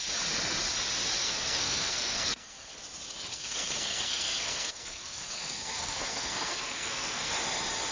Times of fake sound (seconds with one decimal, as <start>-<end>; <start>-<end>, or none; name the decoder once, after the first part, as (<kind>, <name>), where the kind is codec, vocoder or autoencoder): 1.2-2.7 (codec, SNAC); 3.3-7.3